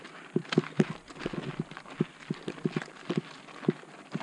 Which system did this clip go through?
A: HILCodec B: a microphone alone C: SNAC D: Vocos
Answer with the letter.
B